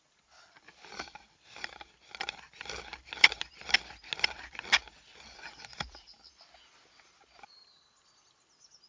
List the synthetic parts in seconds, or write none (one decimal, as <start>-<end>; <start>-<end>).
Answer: none